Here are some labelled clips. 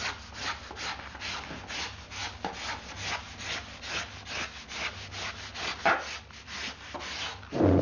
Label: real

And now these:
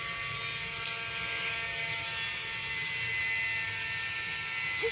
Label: real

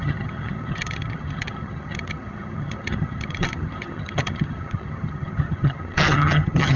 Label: fake